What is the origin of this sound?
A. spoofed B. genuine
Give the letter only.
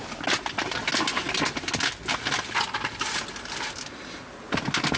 B